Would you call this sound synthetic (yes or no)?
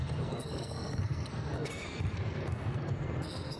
yes